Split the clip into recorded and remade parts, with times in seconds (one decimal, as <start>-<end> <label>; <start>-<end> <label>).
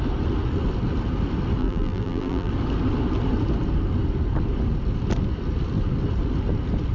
0.0-1.6 recorded; 1.6-2.5 remade; 2.5-6.9 recorded